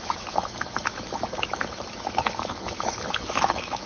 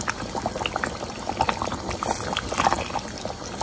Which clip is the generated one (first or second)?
first